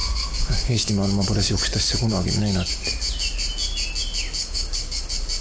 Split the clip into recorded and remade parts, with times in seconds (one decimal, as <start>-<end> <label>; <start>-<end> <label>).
0.0-0.9 remade; 0.9-4.4 recorded; 4.4-5.0 remade; 5.0-5.4 recorded